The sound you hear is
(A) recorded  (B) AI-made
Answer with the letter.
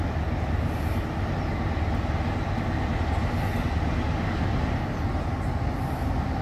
A